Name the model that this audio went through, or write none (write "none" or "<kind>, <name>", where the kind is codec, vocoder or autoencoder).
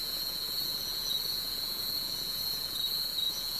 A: vocoder, Vocos